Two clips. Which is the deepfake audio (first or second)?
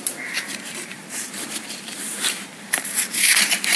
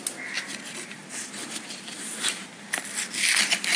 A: first